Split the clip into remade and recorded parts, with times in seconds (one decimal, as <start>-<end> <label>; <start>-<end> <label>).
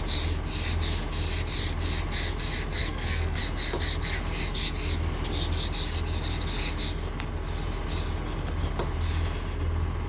0.0-2.8 recorded; 2.8-3.4 remade; 3.4-10.1 recorded